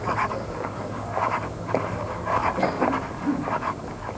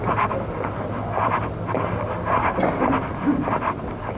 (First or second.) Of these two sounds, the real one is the second